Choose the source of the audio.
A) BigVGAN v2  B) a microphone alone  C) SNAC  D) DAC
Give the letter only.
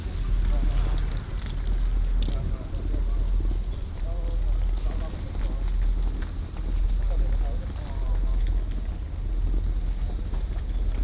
B